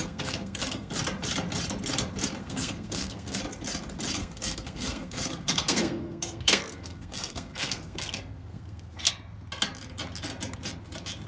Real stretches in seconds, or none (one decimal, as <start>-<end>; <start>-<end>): 0.9-2.4; 3.4-4.2; 9.1-11.3